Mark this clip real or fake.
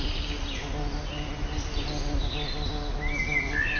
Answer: real